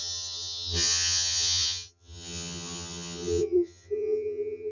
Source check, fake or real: fake